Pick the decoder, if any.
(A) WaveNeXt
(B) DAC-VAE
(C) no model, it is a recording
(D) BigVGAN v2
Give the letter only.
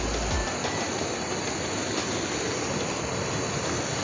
C